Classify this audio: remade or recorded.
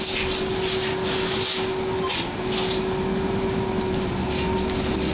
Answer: recorded